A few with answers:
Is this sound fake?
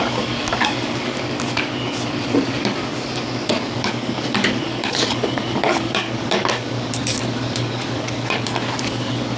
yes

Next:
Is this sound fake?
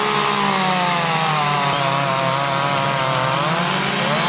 no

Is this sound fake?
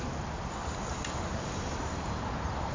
no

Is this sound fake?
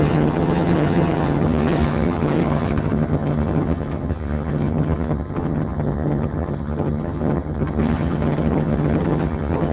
yes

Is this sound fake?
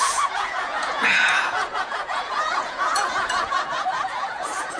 yes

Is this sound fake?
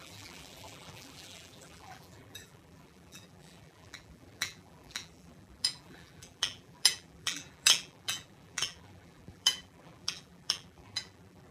yes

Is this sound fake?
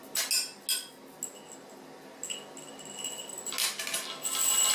no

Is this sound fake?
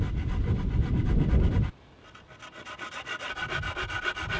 no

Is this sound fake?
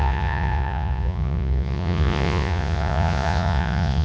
yes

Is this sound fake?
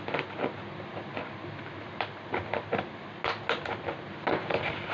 no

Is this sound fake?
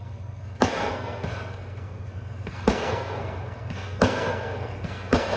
yes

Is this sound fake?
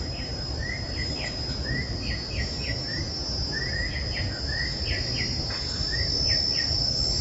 no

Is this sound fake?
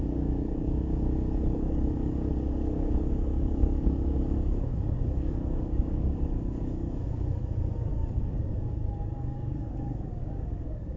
yes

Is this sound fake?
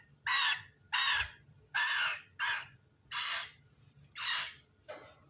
no